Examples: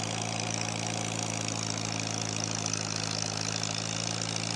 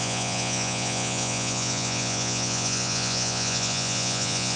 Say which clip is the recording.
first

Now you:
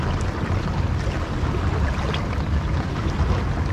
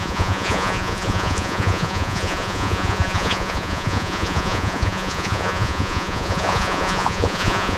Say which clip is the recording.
first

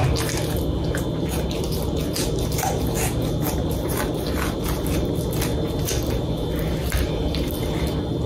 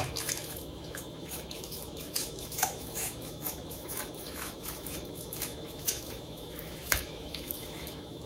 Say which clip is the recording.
first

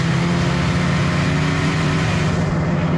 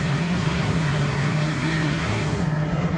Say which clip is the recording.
first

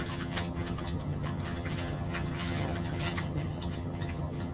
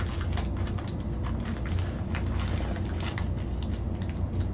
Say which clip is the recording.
second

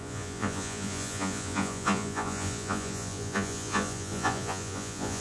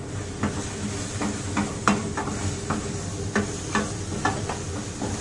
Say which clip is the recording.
second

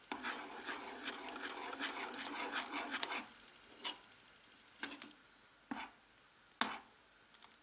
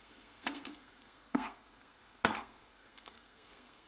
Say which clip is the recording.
first